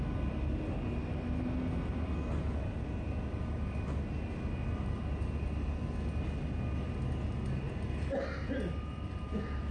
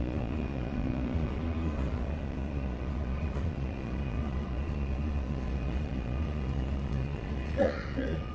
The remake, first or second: second